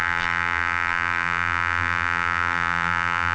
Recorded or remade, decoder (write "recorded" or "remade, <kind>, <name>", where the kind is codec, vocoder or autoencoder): remade, vocoder, BigVGAN v2